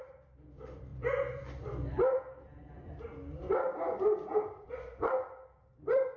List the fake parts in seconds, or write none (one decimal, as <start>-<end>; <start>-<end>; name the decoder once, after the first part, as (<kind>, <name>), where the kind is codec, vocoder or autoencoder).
0.0-6.2 (vocoder, BigVGAN v2)